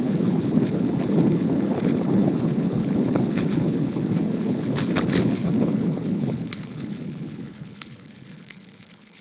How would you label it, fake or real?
fake